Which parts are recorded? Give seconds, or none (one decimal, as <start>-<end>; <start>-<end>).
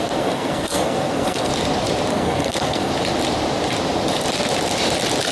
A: 1.5-2.1; 2.9-5.3